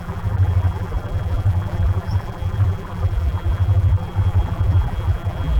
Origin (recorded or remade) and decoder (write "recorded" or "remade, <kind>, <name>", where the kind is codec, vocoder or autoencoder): remade, vocoder, BigVGAN v2